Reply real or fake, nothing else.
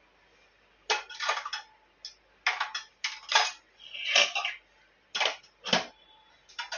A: real